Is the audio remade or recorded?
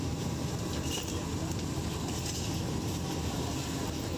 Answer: recorded